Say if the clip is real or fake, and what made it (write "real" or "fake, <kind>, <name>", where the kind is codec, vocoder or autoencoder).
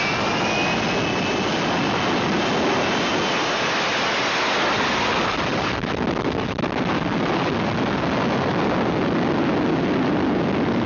real